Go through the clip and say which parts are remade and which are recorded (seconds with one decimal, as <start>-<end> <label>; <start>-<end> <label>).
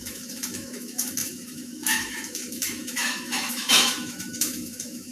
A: 0.0-5.1 remade